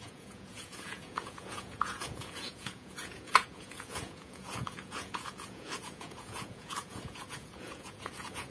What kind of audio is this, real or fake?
fake